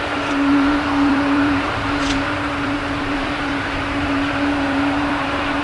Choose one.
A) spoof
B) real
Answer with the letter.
A